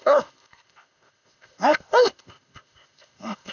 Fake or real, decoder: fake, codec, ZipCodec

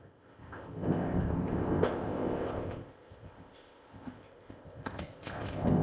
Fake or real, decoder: fake, codec, ZipCodec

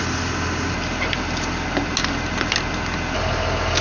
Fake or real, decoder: real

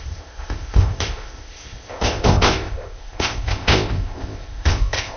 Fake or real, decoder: fake, codec, ZipCodec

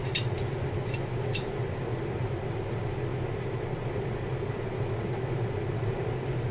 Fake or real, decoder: real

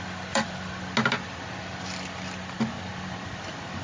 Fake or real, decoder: real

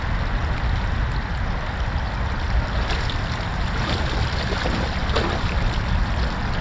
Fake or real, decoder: real